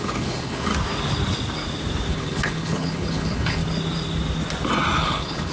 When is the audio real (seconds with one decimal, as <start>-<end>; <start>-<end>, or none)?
0.7-2.1; 3.6-5.0